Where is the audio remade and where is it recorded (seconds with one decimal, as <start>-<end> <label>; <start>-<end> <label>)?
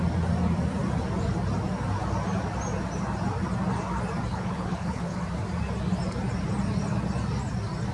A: 0.0-4.3 recorded; 4.3-5.2 remade; 5.2-7.9 recorded